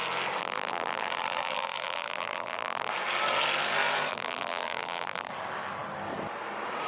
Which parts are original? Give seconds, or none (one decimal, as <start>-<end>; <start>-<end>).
0.0-0.4; 2.9-4.1; 5.3-6.9